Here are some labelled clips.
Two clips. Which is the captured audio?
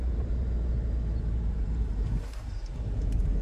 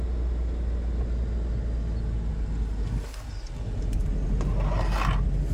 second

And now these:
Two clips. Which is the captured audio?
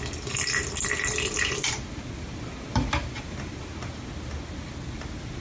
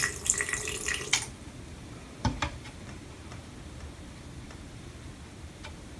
first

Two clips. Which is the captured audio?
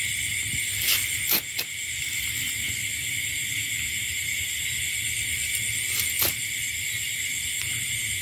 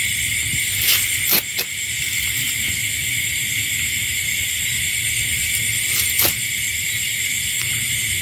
first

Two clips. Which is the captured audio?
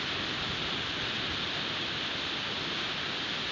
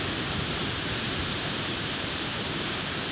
first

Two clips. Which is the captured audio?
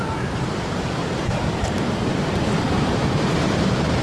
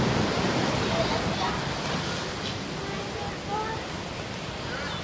second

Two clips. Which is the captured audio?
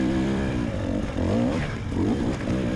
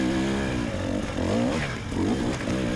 second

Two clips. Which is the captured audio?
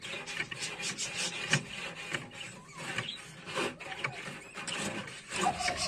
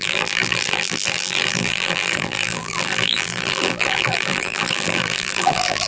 first